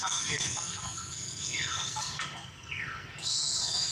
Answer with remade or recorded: remade